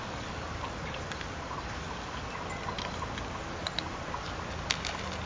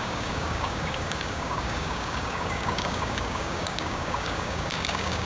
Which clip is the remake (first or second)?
second